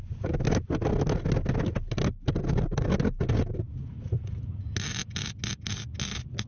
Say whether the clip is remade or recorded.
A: recorded